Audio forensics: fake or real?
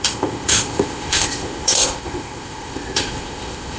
fake